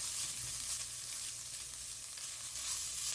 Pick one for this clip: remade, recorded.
recorded